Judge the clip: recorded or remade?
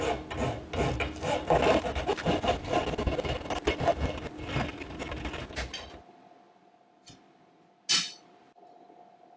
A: recorded